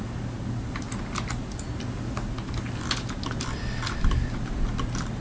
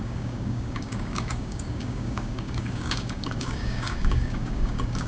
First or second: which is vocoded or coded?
second